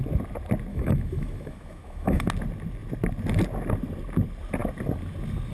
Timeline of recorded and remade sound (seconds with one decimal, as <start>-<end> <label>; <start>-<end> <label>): 0.0-0.7 recorded; 0.7-2.3 remade; 2.3-5.5 recorded